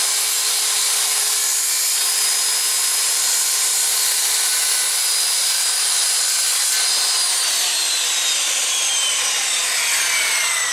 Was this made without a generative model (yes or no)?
yes